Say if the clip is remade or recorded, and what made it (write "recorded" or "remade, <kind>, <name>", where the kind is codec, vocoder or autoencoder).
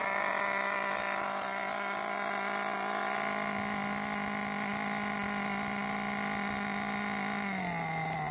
recorded